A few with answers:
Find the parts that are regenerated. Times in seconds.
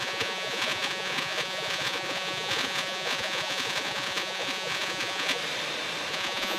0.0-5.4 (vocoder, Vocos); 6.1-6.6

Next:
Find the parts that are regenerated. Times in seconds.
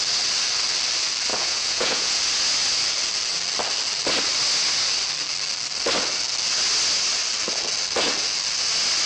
1.3-2.2 (vocoder, Vocos)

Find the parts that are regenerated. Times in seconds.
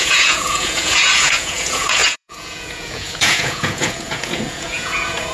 0.0-5.3 (vocoder, Vocos)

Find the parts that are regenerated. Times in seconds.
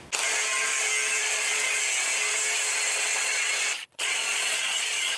1.2-1.8 (vocoder, Vocos); 3.1-5.2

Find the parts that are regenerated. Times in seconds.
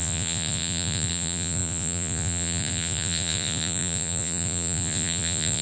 0.0-5.6 (vocoder, Vocos)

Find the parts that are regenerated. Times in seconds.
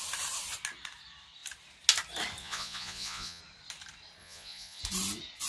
2.4-3.4 (vocoder, Vocos); 4.2-4.8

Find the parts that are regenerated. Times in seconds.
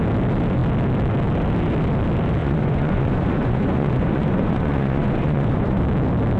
2.4-5.8 (vocoder, Vocos)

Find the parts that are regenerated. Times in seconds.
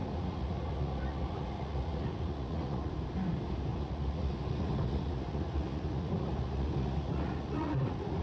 0.0-2.9 (vocoder, Vocos); 3.7-8.2